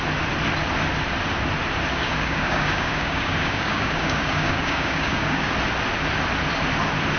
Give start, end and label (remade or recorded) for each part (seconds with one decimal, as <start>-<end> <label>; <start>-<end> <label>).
0.0-1.9 recorded; 1.9-5.5 remade; 5.5-7.2 recorded